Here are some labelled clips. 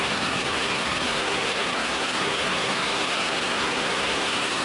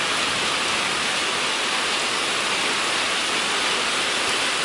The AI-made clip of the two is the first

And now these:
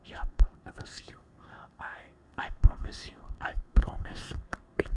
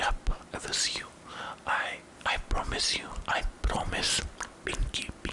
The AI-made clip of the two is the first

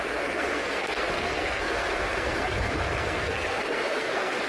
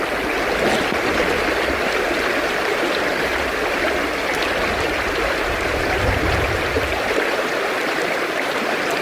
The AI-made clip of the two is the first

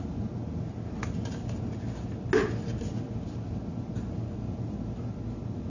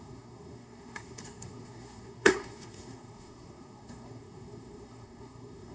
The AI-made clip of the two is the second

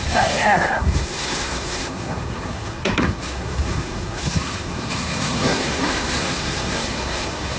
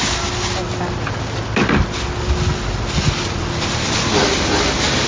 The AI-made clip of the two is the first